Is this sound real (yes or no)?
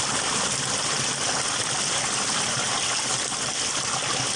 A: yes